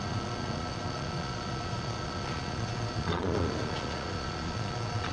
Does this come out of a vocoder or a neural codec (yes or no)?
yes